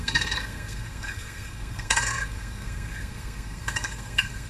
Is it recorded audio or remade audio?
remade